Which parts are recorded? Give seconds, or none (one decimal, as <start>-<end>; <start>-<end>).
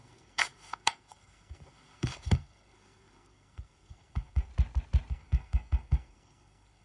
4.5-5.1